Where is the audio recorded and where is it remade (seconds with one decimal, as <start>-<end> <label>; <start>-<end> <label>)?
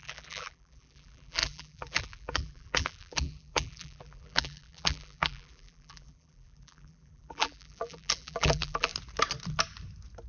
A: 0.0-8.9 remade; 8.9-10.3 recorded